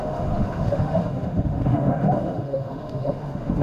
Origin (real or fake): fake